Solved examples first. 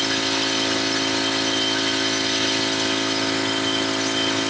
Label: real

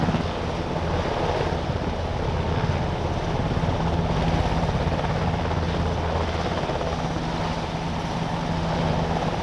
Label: real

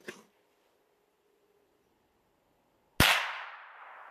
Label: real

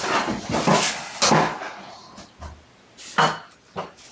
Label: real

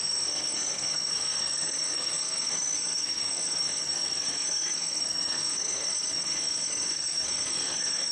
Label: fake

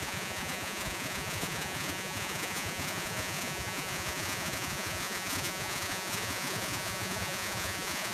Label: fake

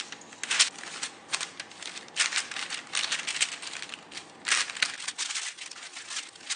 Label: real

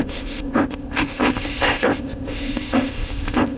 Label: fake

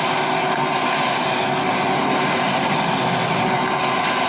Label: real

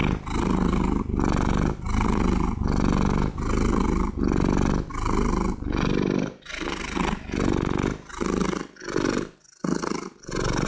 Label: real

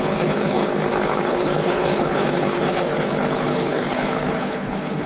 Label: fake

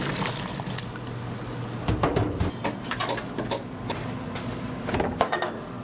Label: real